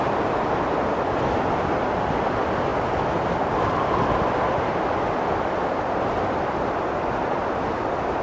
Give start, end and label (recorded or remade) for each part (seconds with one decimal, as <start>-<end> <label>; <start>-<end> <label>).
0.0-8.2 recorded